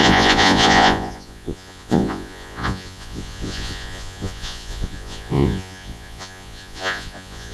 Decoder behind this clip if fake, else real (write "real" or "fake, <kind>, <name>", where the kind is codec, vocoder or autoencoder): fake, vocoder, Vocos